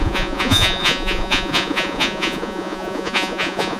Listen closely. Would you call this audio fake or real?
fake